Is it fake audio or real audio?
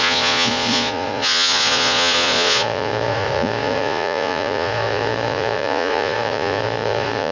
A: fake